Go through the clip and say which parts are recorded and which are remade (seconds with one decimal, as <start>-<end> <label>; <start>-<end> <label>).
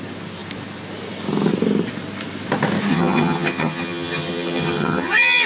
0.0-2.9 recorded; 2.9-5.5 remade